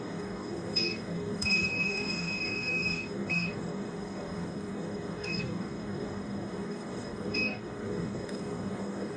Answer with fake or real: fake